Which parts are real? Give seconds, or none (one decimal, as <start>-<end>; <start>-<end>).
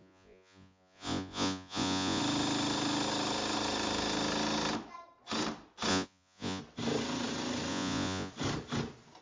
2.2-5.9; 6.6-7.7; 8.3-9.2